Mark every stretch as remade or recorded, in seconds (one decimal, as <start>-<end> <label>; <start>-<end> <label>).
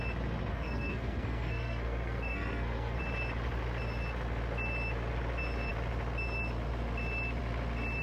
0.0-0.5 recorded; 0.5-3.0 remade; 3.0-8.0 recorded